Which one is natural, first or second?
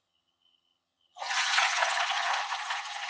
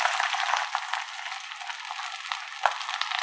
second